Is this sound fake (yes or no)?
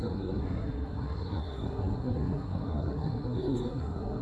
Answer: yes